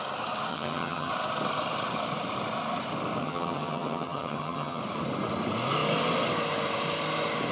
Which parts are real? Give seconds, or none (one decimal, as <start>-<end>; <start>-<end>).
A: 0.0-0.5; 1.1-3.2; 4.8-7.5